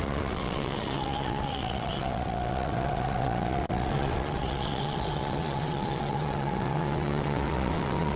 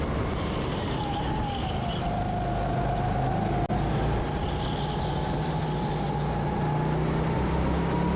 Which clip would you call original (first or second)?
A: second